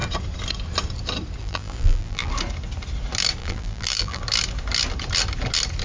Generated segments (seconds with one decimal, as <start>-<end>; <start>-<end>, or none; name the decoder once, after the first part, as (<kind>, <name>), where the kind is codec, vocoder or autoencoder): 1.4-2.3 (vocoder, BigVGAN v2); 3.4-4.2